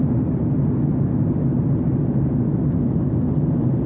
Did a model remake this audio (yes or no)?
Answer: no